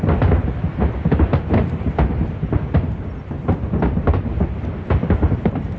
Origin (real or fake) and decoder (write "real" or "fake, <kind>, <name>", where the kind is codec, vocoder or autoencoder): fake, vocoder, BigVGAN v2